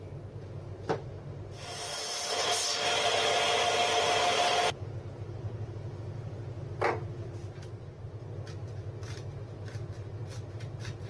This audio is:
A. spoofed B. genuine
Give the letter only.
B